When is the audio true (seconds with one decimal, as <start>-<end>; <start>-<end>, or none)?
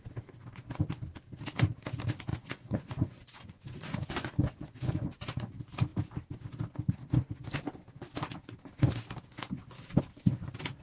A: 0.0-2.3; 5.5-10.8